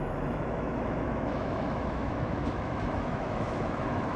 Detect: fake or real fake